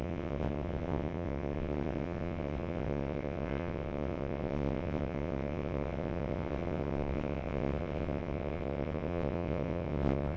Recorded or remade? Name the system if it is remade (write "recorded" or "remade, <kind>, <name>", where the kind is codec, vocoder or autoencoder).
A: remade, vocoder, WaveNeXt